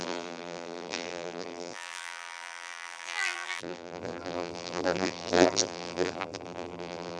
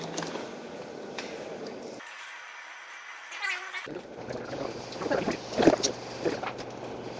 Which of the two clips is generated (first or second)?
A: first